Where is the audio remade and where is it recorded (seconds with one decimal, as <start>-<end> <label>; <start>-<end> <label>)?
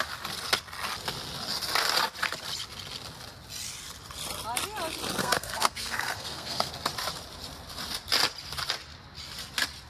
0.0-5.2 recorded; 5.2-6.7 remade; 6.7-9.9 recorded